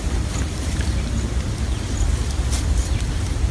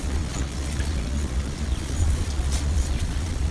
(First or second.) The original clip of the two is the first